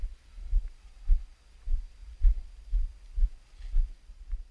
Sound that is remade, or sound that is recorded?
recorded